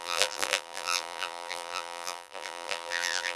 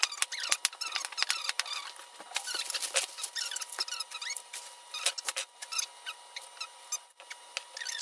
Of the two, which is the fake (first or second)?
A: first